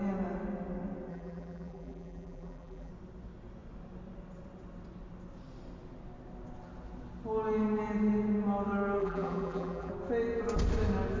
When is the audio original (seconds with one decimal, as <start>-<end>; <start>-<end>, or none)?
0.0-1.1; 2.9-9.0; 9.9-11.2